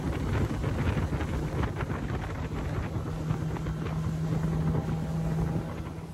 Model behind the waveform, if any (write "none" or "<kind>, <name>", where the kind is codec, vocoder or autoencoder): none